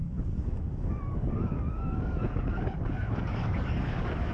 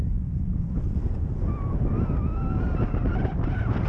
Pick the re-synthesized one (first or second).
first